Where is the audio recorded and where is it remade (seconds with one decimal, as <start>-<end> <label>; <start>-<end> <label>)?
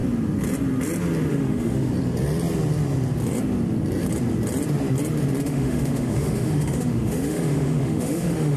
0.0-1.3 recorded; 1.3-1.9 remade; 1.9-5.4 recorded; 5.4-8.6 remade